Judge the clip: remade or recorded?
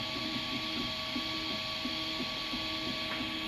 recorded